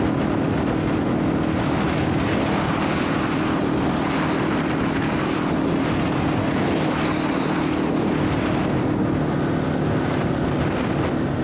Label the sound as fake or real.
real